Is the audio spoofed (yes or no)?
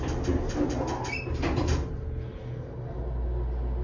no